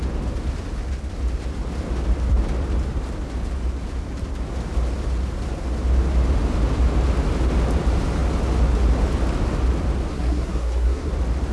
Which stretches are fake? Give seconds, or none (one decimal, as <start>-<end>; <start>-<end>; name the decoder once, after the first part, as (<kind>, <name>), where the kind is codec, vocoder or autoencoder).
10.1-11.1 (codec, SNAC)